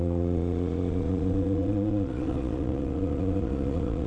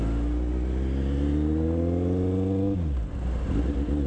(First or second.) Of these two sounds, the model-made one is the first